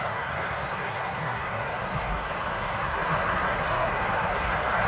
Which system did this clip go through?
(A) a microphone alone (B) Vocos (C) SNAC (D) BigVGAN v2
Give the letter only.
C